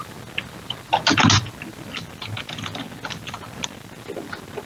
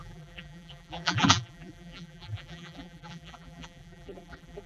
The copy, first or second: second